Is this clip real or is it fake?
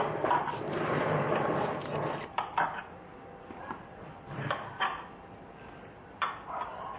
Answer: real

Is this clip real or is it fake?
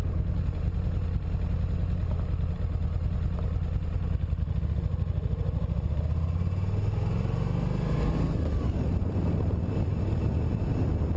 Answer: real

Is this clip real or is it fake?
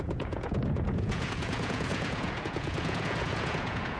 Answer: fake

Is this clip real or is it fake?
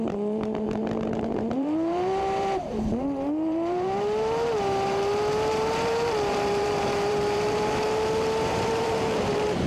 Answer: fake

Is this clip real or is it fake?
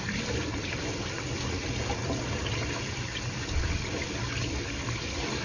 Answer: fake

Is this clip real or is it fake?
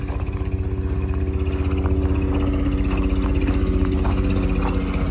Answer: real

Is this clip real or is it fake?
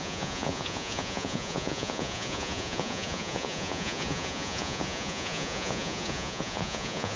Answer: fake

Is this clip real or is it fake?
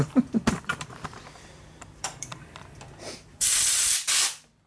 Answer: fake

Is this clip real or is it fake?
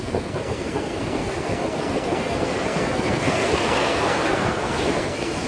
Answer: fake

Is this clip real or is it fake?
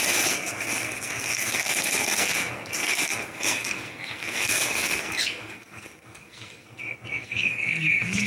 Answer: fake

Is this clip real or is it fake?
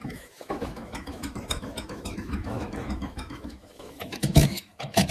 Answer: fake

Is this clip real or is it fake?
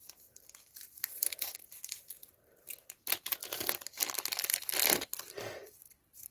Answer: real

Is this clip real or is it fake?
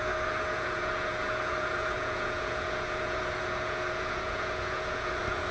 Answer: fake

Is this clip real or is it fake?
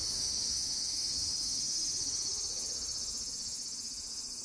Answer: fake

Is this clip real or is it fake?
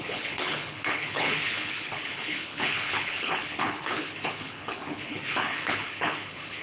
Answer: fake